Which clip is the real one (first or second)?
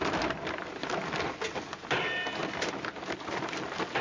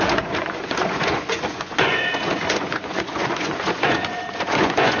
first